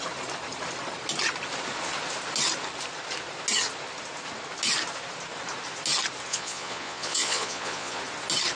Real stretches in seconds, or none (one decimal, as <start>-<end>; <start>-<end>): 0.0-6.3; 8.0-8.6